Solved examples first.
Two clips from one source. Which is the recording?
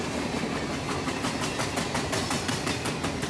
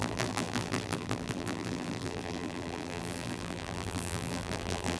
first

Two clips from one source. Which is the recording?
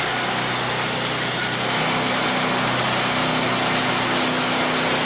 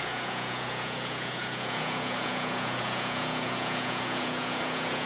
first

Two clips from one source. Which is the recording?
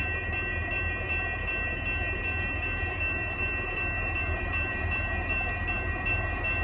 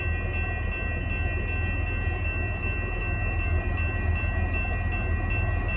second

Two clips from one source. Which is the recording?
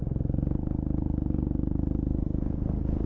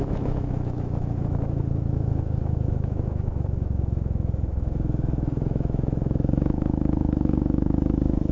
first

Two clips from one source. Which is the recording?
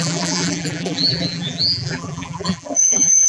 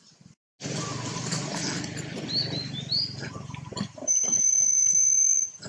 second